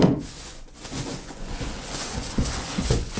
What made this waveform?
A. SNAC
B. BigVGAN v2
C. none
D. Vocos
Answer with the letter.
D